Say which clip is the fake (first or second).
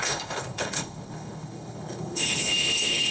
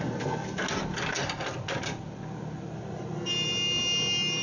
first